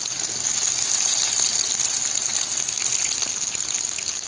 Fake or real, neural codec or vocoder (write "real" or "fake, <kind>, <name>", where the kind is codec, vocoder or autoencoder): real